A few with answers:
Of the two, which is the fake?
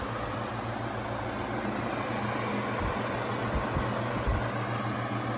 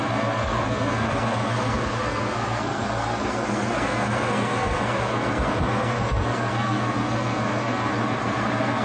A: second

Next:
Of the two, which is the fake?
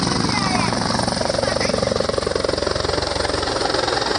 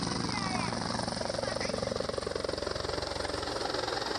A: first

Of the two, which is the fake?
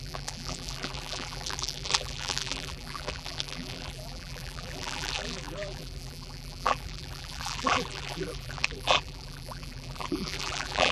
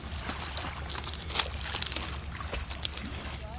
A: first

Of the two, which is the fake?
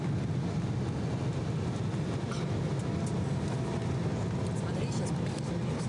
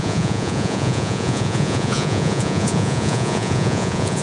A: second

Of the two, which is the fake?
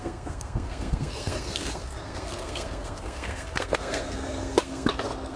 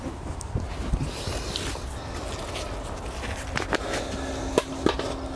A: first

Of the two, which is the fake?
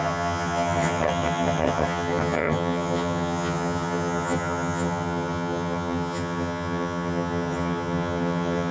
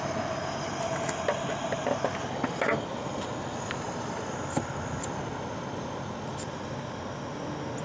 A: first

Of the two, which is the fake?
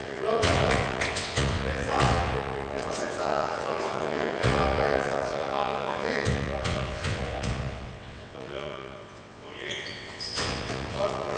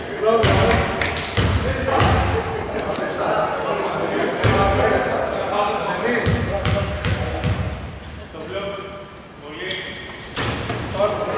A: first